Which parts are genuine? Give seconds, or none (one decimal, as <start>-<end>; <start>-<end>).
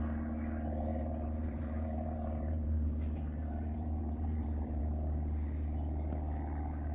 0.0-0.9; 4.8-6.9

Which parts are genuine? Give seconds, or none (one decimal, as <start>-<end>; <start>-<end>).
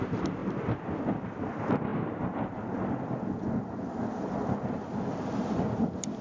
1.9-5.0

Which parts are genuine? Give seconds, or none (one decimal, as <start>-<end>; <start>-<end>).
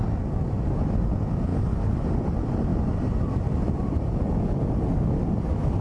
0.0-2.7; 3.8-5.8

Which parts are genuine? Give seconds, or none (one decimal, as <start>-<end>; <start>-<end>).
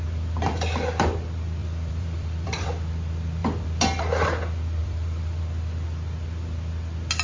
0.0-1.6; 2.7-3.4; 4.0-4.8; 5.4-7.2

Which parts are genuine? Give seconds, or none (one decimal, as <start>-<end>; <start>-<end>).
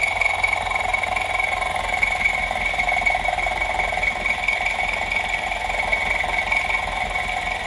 0.0-7.7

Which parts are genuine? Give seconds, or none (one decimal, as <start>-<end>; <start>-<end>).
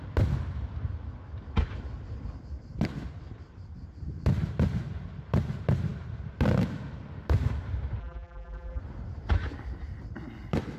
0.0-8.0; 8.8-10.8